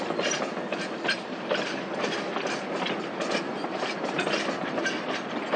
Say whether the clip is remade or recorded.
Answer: recorded